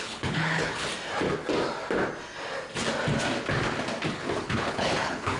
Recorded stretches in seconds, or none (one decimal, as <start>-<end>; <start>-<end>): 0.9-4.1